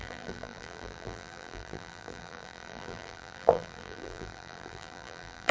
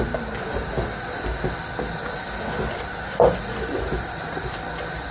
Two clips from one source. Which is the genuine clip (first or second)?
second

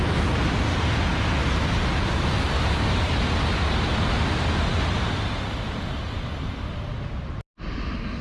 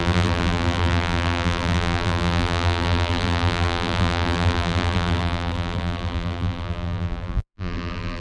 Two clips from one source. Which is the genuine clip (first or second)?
first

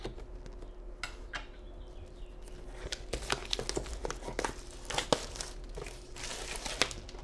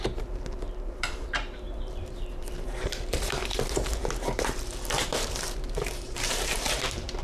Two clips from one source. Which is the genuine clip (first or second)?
first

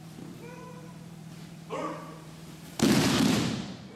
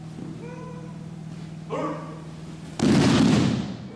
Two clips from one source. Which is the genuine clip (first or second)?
second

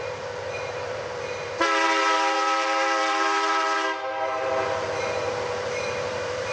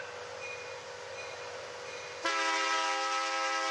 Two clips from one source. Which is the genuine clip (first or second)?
second